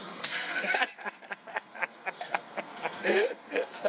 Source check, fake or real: fake